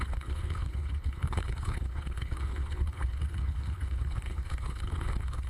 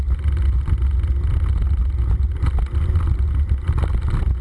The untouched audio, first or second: second